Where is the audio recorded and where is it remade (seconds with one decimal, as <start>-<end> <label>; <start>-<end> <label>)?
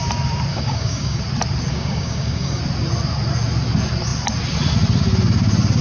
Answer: 0.0-0.5 recorded; 0.5-1.2 remade; 1.2-1.7 recorded; 1.7-2.6 remade; 2.6-5.8 recorded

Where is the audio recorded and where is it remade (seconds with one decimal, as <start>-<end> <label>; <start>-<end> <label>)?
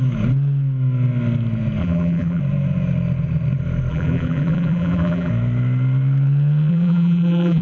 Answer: 0.0-1.8 recorded; 1.8-2.4 remade; 2.4-3.9 recorded; 3.9-5.3 remade; 5.3-6.7 recorded; 6.7-7.6 remade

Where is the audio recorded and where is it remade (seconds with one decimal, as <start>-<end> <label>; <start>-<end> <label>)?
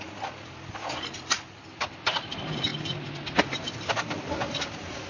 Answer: 0.0-5.1 recorded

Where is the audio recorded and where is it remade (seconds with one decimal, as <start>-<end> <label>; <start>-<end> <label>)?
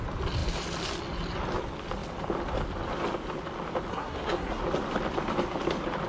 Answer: 0.0-3.9 recorded; 3.9-4.6 remade; 4.6-6.1 recorded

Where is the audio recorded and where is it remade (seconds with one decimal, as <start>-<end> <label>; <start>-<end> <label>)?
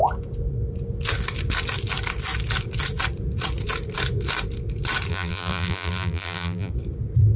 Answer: 0.0-5.1 recorded; 5.1-6.7 remade; 6.7-7.4 recorded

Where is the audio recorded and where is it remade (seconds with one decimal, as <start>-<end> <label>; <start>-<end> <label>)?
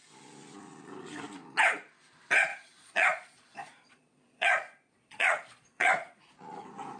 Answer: 0.0-2.5 recorded; 2.5-6.3 remade; 6.3-7.0 recorded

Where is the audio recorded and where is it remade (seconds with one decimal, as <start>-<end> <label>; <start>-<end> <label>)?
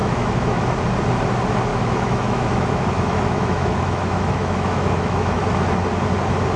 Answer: 0.0-0.8 remade; 0.8-1.7 recorded; 1.7-5.7 remade; 5.7-6.6 recorded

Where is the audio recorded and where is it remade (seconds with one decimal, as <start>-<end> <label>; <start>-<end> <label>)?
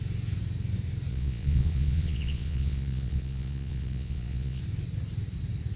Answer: 0.0-1.1 recorded; 1.1-4.6 remade; 4.6-5.8 recorded